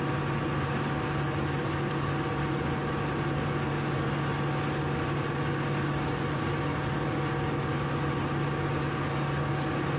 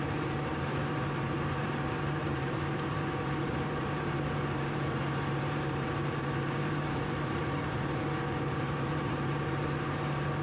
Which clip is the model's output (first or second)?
second